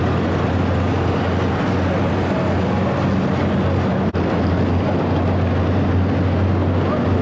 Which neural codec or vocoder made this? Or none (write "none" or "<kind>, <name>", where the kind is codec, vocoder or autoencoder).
none